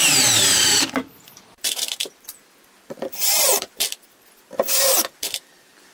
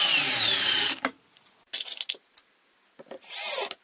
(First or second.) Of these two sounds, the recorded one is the second